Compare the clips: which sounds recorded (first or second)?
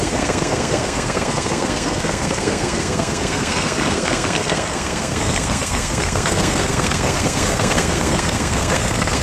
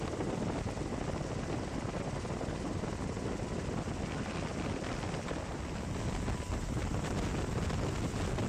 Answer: second